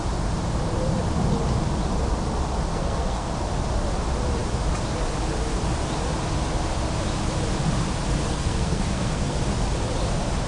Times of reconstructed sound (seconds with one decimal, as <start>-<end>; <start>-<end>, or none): 2.7-3.3; 8.2-9.4

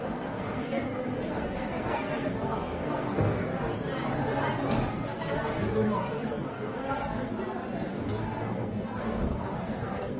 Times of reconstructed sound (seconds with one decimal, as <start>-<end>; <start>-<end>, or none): 0.0-3.5; 4.9-7.3; 7.9-10.2

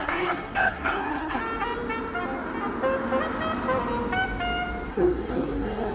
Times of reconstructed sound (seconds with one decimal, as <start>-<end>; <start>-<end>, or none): 0.0-1.4; 4.9-5.9

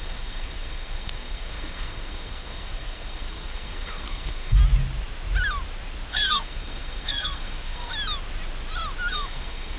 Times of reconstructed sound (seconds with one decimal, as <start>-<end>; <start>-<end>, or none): 0.0-4.6; 6.1-7.9; 9.1-9.8

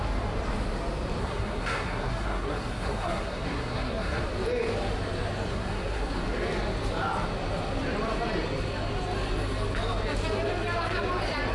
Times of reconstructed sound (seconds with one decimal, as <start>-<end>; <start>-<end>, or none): 1.2-4.2; 5.5-6.2

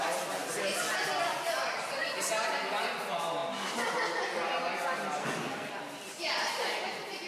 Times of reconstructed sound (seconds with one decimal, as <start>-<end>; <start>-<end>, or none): 5.2-5.7